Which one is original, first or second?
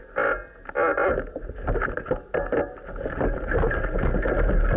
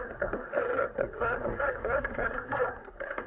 first